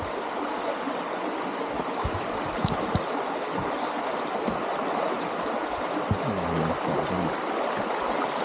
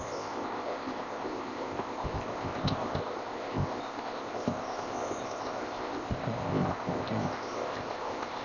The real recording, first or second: first